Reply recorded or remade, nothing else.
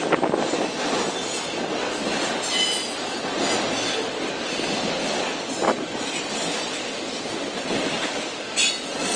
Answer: recorded